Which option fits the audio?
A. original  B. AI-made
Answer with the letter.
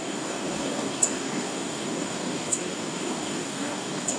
B